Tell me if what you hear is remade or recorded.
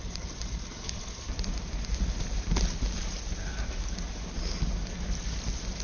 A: recorded